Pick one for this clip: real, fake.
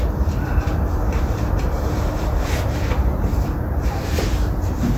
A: fake